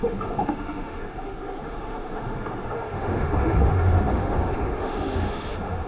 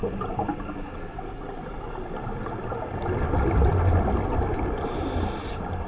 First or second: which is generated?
first